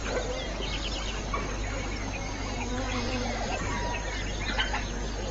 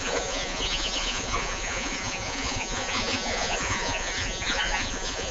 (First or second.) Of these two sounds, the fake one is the second